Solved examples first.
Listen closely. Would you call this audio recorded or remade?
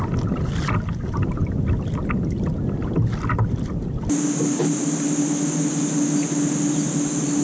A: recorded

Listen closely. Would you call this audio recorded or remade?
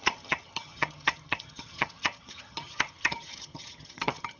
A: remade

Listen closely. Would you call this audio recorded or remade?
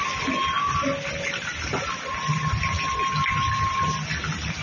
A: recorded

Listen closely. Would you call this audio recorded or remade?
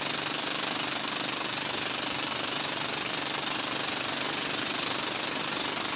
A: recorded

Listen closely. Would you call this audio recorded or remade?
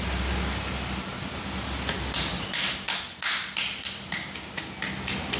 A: recorded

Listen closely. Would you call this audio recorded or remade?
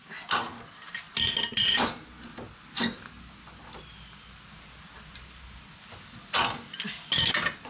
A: recorded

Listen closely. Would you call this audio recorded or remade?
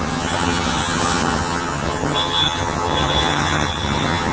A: remade